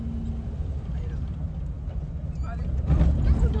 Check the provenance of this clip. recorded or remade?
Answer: recorded